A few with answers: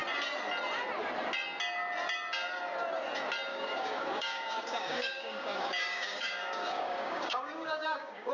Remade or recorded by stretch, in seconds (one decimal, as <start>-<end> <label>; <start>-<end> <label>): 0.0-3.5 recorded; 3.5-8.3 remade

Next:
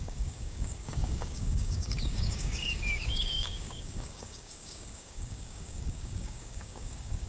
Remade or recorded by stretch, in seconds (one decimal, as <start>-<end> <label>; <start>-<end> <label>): 0.0-7.3 remade

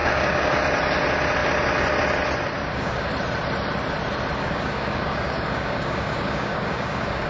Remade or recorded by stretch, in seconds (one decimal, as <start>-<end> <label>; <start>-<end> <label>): 0.0-0.6 remade; 0.6-2.6 recorded; 2.6-3.1 remade; 3.1-4.4 recorded; 4.4-7.3 remade

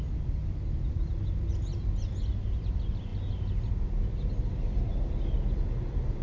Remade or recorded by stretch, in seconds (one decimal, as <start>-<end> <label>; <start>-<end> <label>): 0.0-6.2 recorded

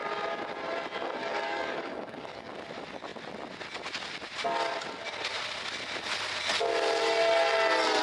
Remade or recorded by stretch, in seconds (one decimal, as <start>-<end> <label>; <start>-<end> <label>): 0.0-1.2 recorded; 1.2-2.5 remade; 2.5-8.0 recorded